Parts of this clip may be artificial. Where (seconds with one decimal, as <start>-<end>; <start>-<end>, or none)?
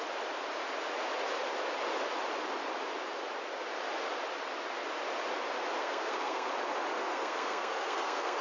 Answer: 5.8-6.5; 7.0-8.4